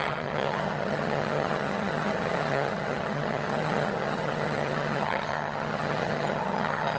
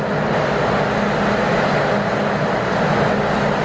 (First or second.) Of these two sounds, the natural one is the second